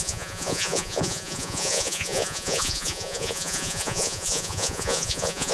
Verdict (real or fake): fake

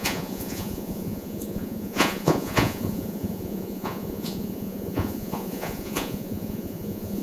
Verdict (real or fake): fake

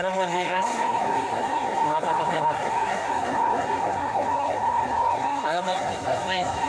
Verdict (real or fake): fake